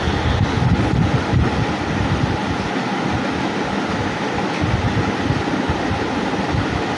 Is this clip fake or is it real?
real